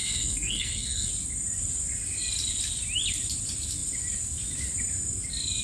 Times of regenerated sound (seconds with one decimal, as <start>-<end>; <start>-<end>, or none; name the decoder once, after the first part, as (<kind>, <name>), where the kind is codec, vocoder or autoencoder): 0.0-1.1 (codec, SNAC)

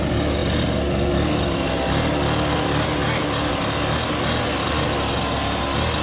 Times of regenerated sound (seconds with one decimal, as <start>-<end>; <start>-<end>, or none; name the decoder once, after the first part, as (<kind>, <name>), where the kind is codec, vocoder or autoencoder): none

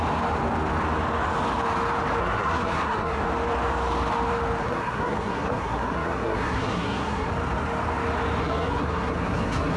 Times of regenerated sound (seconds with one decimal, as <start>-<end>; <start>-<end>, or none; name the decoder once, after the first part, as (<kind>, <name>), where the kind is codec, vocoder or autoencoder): 2.2-3.3 (codec, SNAC); 4.6-7.3; 8.4-9.8

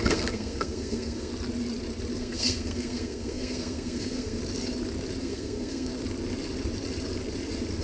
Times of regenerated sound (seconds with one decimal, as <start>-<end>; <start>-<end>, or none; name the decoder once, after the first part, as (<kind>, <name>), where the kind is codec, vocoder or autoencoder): 0.0-1.3 (codec, SNAC); 2.2-4.4; 5.2-5.9

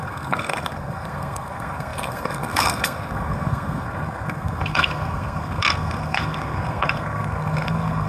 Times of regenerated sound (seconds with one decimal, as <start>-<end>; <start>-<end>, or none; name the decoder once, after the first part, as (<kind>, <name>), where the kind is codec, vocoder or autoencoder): 0.0-8.1 (codec, SNAC)